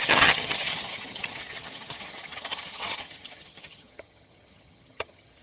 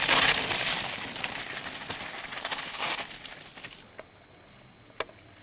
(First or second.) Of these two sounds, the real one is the second